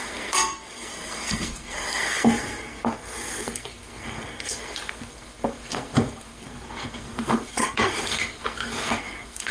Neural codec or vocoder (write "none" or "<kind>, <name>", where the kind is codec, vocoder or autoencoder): codec, SNAC